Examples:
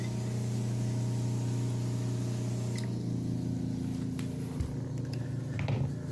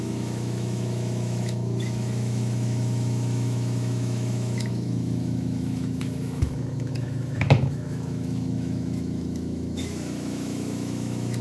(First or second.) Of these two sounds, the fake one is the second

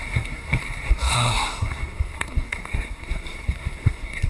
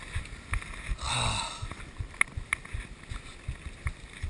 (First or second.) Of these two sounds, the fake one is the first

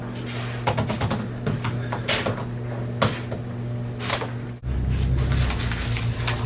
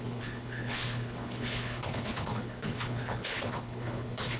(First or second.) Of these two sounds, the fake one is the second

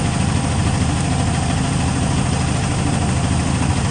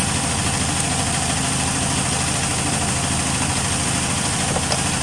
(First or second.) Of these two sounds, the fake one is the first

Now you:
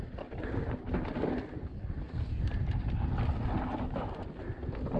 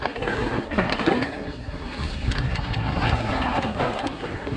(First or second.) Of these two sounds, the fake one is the second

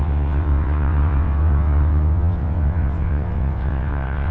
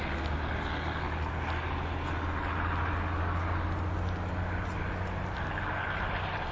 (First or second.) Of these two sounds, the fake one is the first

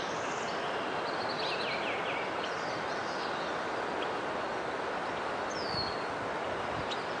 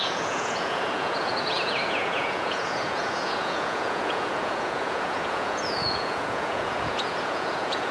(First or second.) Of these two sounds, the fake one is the second